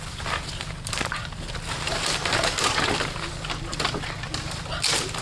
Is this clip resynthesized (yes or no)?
no